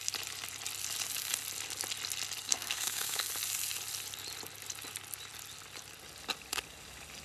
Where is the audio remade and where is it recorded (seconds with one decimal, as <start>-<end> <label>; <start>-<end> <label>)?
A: 0.0-2.4 recorded; 2.4-3.3 remade; 3.3-7.2 recorded